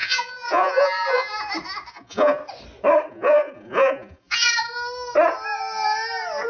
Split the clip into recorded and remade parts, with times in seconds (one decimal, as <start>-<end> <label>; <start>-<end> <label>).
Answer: 0.0-1.3 remade; 1.3-1.9 recorded; 1.9-2.4 remade; 2.4-3.1 recorded; 3.1-4.7 remade; 4.7-6.5 recorded

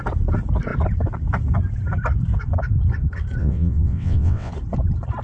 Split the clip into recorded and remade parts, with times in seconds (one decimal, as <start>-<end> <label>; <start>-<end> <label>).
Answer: 0.0-3.4 recorded; 3.4-4.5 remade; 4.5-5.2 recorded

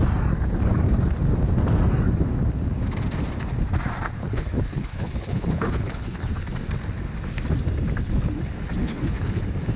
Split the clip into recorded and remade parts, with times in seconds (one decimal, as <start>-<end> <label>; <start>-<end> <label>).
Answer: 0.0-4.2 recorded; 4.2-6.3 remade; 6.3-8.8 recorded; 8.8-9.4 remade; 9.4-9.8 recorded